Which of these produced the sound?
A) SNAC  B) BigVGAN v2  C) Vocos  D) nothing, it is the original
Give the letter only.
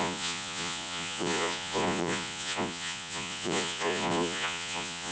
C